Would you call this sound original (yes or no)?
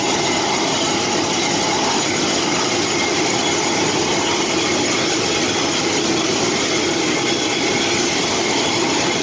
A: yes